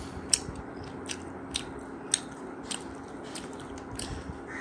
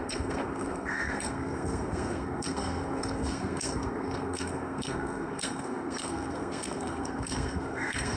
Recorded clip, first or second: first